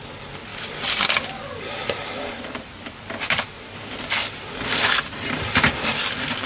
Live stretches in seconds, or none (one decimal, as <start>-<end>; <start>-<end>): 0.0-6.5